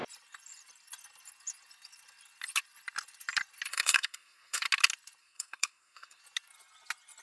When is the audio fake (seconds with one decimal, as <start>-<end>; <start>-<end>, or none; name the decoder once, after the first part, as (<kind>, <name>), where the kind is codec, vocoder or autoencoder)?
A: 3.7-4.6 (codec, SNAC); 5.2-6.2